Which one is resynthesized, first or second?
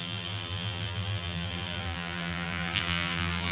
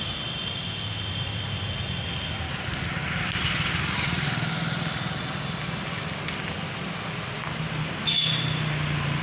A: first